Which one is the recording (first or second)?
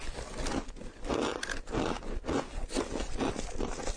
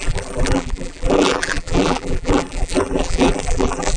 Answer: first